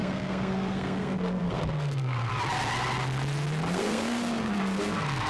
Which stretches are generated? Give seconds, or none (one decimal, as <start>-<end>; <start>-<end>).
0.0-2.3; 3.7-5.3